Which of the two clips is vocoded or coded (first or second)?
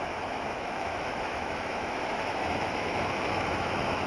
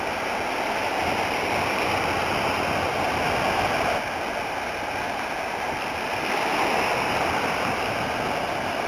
first